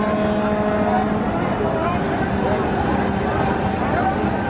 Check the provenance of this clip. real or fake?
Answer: real